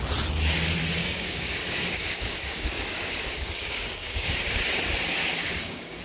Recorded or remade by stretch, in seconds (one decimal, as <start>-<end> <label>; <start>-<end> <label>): 0.0-1.0 recorded; 1.0-4.6 remade; 4.6-5.2 recorded; 5.2-6.0 remade